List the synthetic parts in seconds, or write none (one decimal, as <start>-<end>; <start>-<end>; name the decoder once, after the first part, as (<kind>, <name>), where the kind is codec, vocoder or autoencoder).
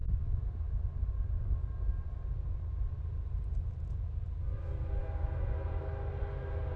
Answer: none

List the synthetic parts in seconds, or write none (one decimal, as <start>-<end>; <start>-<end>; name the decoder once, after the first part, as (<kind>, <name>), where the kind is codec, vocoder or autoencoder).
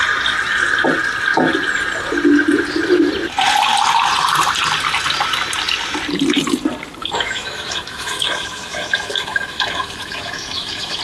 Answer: 7.0-11.0 (autoencoder, DAC-VAE)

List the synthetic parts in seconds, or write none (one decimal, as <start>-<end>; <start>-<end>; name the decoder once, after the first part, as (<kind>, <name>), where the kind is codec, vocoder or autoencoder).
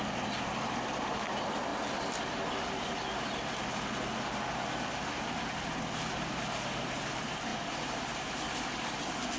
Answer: none